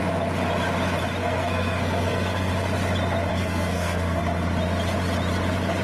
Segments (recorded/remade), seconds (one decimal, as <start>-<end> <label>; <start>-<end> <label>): 0.0-1.2 recorded; 1.2-2.5 remade; 2.5-3.3 recorded; 3.3-4.2 remade; 4.2-5.8 recorded